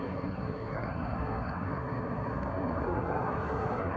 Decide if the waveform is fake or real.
fake